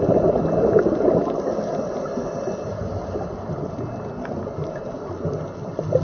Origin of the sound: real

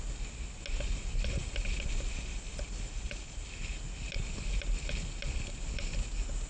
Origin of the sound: real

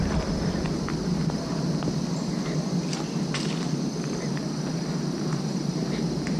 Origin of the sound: real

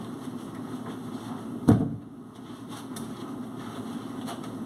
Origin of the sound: real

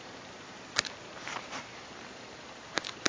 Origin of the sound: fake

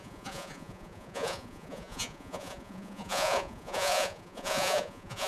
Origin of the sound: fake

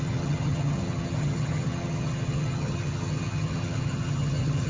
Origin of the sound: fake